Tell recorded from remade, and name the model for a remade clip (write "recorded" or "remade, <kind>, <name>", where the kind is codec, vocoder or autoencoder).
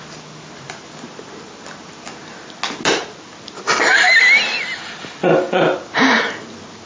recorded